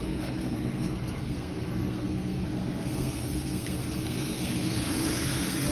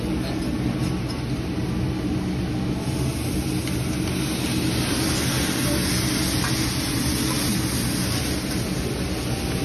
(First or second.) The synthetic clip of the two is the first